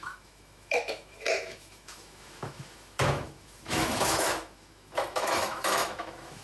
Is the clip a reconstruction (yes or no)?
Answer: yes